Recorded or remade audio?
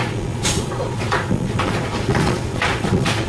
remade